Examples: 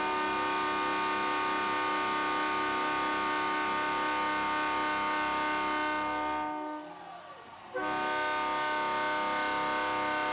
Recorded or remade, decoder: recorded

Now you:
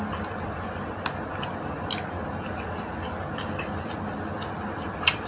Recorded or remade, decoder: recorded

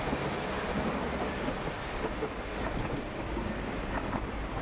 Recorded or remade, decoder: recorded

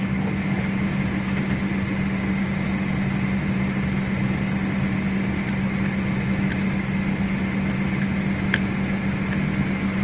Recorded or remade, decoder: recorded